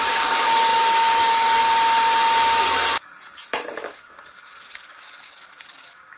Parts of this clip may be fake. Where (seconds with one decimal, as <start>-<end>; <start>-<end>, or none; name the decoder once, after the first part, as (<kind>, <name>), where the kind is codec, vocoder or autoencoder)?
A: 0.0-1.6 (codec, DAC); 2.6-6.2